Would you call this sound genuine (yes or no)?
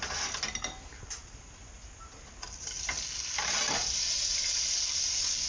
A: yes